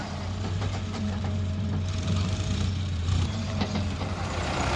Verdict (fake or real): fake